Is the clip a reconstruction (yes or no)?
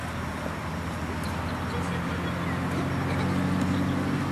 no